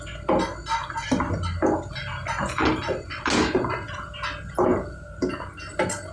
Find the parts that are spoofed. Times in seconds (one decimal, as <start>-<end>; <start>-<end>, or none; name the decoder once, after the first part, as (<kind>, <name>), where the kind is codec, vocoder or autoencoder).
none